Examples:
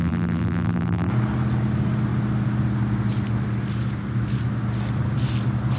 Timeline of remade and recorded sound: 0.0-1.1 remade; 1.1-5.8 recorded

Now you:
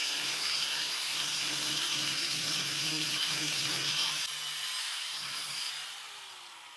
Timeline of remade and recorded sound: 0.0-4.1 remade; 4.1-4.8 recorded; 4.8-5.7 remade; 5.7-6.8 recorded

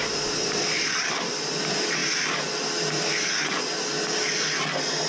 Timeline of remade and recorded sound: 0.0-1.5 remade; 1.5-5.1 recorded